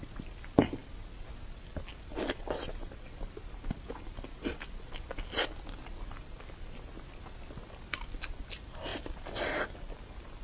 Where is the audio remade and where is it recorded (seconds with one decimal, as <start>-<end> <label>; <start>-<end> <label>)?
0.0-10.4 recorded